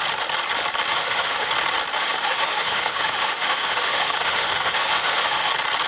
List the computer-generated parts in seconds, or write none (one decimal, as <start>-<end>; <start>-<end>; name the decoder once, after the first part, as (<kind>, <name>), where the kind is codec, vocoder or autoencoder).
0.9-1.5 (autoencoder, DAC-VAE); 2.0-5.5